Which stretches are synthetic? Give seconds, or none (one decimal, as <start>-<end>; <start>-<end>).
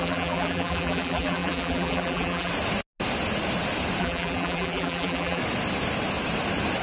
0.0-2.5; 4.0-5.4